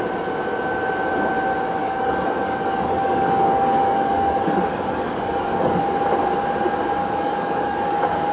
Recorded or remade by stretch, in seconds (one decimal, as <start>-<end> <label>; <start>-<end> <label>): 0.0-1.8 recorded; 1.8-5.8 remade; 5.8-7.0 recorded; 7.0-8.3 remade